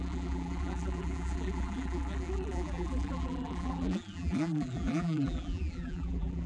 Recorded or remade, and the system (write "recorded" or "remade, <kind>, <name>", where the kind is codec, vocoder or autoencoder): remade, vocoder, BigVGAN v2